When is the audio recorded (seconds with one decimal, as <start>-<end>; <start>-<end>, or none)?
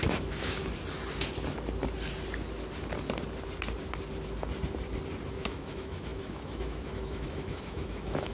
0.6-5.3